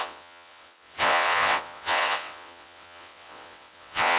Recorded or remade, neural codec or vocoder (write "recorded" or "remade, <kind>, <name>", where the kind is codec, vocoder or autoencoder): remade, vocoder, WaveNeXt